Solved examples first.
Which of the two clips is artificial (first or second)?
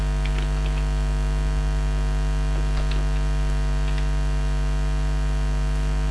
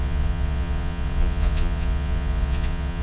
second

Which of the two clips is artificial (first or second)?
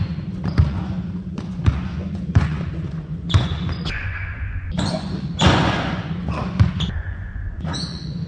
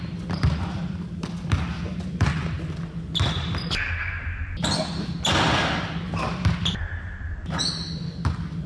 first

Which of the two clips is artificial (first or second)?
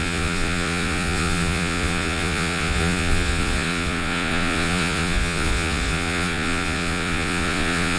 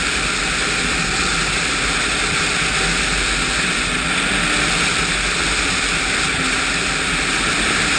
first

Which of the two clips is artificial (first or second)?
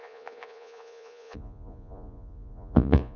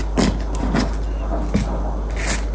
first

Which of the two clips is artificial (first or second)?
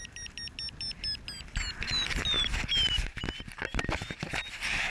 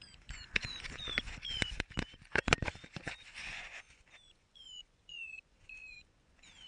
second